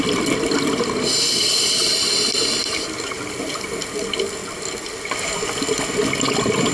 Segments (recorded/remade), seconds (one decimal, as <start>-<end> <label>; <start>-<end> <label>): 0.0-6.7 recorded